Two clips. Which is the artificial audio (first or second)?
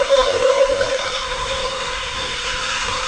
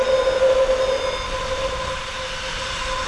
first